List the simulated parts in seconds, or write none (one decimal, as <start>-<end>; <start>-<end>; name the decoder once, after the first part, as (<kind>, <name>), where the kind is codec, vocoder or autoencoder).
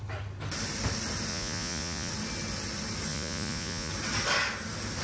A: 1.3-2.1 (vocoder, Vocos); 3.1-3.9